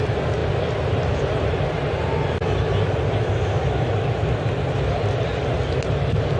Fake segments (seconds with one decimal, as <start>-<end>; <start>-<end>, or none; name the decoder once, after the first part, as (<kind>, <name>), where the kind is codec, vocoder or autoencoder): none

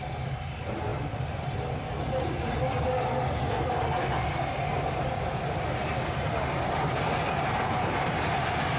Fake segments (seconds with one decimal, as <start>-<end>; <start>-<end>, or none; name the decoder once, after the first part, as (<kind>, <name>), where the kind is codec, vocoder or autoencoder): none